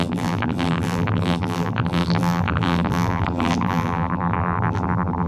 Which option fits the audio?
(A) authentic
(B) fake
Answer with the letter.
B